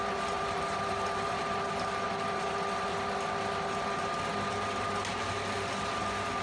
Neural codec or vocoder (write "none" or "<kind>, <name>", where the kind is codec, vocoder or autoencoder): none